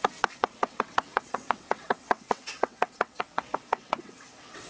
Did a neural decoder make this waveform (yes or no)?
yes